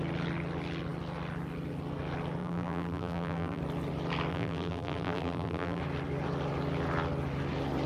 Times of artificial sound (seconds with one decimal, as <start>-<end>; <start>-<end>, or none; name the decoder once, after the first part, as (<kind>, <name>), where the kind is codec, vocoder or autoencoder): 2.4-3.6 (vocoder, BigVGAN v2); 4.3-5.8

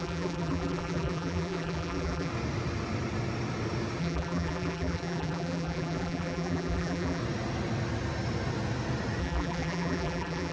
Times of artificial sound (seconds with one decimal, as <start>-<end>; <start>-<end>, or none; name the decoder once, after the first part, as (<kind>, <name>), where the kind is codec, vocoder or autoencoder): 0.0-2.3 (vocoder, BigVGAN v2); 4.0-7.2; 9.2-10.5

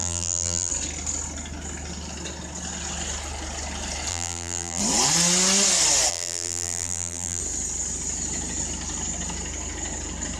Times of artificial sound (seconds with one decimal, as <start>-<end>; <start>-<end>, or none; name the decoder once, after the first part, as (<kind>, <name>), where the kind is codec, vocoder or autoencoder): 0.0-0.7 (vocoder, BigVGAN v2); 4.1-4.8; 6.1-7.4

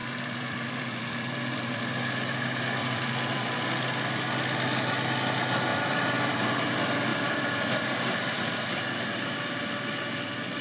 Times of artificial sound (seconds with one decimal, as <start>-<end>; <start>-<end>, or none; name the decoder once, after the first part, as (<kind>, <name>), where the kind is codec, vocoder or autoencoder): 0.0-1.8 (vocoder, BigVGAN v2); 2.8-3.6; 5.7-6.6; 7.1-10.6